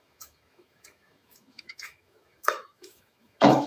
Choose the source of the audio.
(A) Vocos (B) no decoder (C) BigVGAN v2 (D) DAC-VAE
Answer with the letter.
D